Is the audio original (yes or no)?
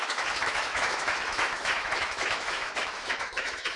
no